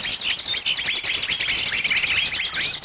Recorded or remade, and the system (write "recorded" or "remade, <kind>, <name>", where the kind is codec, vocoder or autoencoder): recorded